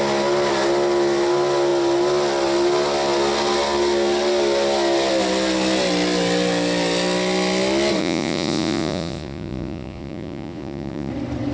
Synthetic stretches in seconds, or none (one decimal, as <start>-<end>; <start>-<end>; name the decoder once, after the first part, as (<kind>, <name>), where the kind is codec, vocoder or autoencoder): 8.0-11.1 (vocoder, Vocos)